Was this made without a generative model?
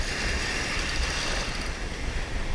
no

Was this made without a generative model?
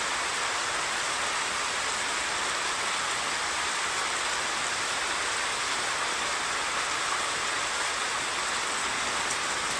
yes